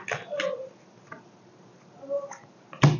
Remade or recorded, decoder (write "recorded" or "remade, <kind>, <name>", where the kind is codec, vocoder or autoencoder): recorded